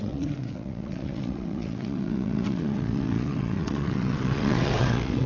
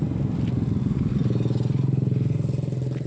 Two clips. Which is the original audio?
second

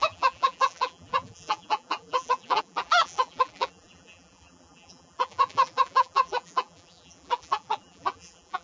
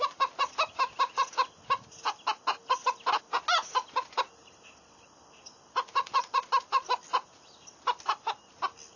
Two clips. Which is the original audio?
second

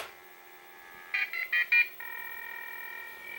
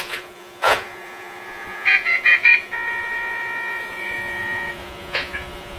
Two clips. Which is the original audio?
first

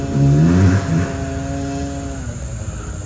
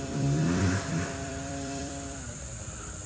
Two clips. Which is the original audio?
first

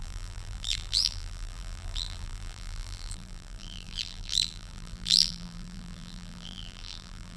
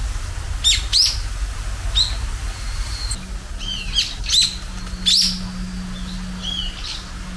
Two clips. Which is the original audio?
second